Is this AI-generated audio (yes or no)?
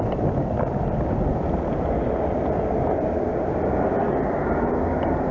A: no